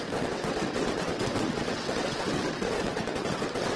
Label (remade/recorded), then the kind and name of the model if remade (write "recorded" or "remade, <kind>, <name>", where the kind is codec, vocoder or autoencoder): remade, vocoder, WaveNeXt